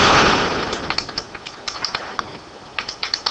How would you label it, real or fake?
real